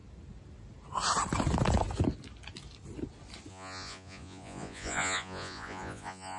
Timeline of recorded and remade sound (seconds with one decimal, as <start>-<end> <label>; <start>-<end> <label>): 0.0-3.5 recorded; 3.5-6.4 remade